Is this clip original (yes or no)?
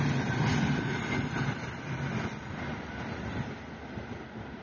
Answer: yes